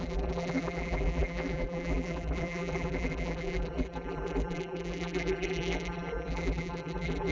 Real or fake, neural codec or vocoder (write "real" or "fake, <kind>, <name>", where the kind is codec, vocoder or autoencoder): fake, vocoder, BigVGAN v2